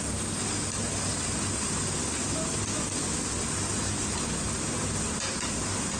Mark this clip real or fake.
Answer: real